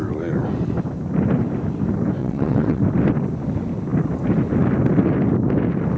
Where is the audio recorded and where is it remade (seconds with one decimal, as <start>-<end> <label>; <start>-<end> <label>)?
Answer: 0.0-2.2 recorded; 2.2-2.8 remade; 2.8-6.0 recorded